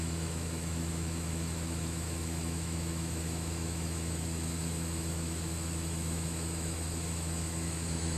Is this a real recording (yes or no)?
no